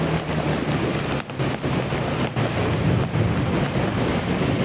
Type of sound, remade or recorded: recorded